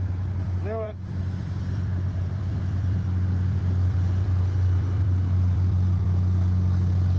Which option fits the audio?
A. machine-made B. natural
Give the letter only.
A